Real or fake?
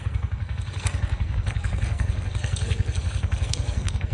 fake